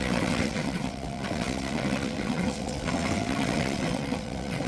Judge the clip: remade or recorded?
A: remade